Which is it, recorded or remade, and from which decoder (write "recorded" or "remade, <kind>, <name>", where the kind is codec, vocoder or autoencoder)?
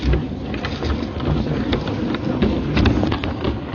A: recorded